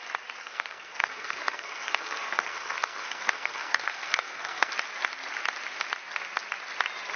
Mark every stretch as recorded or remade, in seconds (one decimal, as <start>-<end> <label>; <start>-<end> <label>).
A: 0.0-0.4 recorded; 0.4-4.7 remade; 4.7-7.2 recorded